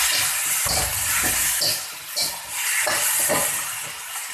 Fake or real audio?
real